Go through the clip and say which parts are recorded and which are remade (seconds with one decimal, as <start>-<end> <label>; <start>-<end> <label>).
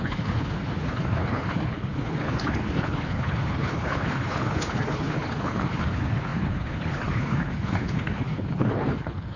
0.0-9.4 remade